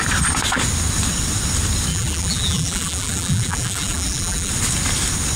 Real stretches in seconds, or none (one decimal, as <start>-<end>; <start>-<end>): 0.0-1.9; 4.5-5.4